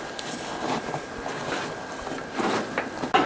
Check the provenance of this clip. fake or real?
real